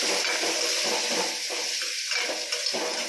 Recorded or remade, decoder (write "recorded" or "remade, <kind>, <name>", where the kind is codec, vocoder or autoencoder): recorded